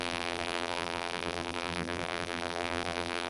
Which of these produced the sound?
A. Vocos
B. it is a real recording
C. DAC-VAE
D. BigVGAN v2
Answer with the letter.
D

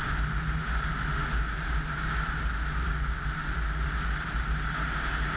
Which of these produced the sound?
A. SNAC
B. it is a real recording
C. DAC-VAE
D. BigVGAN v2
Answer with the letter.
B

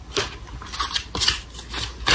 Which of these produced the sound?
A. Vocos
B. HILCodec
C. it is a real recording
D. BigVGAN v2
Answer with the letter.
C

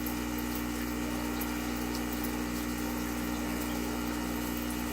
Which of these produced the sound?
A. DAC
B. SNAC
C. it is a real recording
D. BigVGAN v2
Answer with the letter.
C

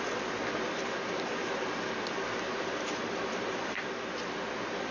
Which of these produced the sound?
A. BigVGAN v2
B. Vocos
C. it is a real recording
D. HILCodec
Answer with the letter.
A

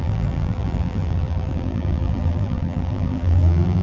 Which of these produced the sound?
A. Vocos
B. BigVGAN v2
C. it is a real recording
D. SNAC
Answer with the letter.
B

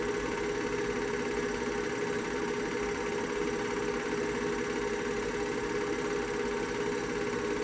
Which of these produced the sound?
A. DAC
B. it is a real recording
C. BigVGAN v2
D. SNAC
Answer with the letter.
B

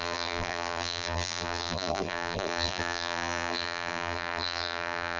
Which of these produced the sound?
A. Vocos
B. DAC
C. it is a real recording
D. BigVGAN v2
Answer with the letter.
D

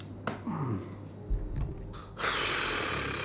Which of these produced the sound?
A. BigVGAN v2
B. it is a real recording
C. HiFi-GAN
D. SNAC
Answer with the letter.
B